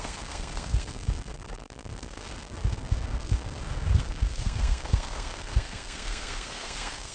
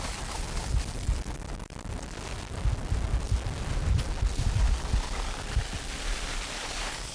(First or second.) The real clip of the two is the second